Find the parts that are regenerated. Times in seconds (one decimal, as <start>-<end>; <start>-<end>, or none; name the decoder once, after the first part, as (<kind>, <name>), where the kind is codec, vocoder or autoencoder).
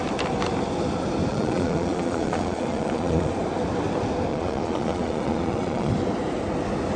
1.3-3.3 (vocoder, Vocos); 4.3-5.9